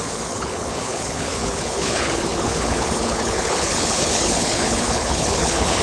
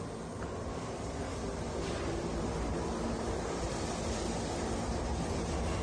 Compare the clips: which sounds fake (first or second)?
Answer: first